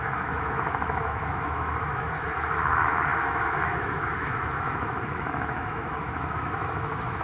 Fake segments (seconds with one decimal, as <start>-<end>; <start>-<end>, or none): 0.0-7.2